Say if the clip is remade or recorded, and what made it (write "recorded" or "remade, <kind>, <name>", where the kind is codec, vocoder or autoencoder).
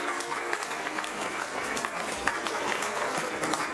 remade, codec, SNAC